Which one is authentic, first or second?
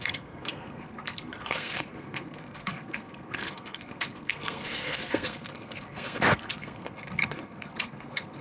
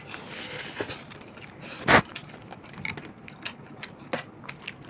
second